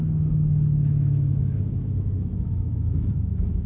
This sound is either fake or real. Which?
fake